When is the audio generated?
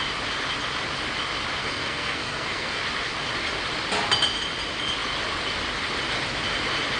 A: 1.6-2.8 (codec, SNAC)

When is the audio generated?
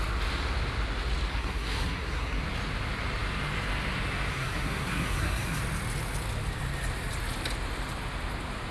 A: 1.3-2.4 (codec, SNAC); 4.3-5.6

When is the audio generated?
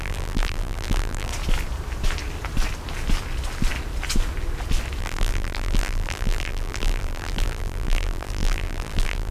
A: 0.0-1.3 (vocoder, BigVGAN v2); 5.0-9.3